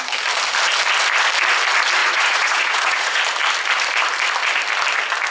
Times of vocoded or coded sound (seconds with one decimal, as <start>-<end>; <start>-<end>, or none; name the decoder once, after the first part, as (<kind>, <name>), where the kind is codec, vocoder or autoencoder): 2.0-3.2 (vocoder, Vocos)

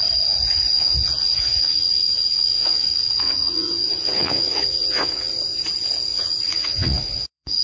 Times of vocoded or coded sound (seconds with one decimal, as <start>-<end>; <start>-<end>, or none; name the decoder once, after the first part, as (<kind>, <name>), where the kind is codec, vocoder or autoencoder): 0.7-5.3 (vocoder, Vocos); 6.1-7.6

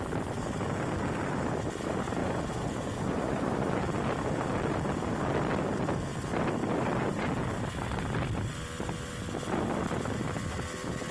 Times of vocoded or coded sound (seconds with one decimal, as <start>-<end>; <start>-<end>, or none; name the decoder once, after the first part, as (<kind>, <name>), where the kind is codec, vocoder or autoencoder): 2.2-3.8 (vocoder, Vocos)

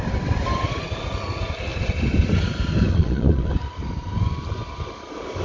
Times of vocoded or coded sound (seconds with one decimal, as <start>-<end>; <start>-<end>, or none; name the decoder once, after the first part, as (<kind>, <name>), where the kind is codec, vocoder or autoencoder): 2.9-3.5 (vocoder, Vocos)

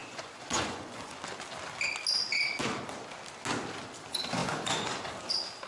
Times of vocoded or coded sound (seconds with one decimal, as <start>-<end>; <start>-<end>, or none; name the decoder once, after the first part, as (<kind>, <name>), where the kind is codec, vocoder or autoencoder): 0.0-1.2 (vocoder, Vocos); 4.4-5.1

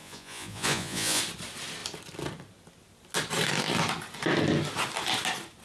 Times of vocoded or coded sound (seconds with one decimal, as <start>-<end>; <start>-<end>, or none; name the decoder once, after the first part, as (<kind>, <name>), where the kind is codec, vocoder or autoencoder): 0.0-1.2 (vocoder, Vocos)

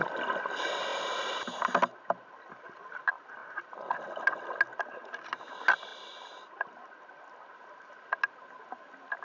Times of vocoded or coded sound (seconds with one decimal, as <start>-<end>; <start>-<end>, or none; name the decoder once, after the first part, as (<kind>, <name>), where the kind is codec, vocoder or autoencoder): none